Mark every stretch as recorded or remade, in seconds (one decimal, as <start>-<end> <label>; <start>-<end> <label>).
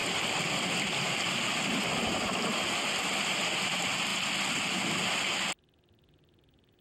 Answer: 0.0-6.8 recorded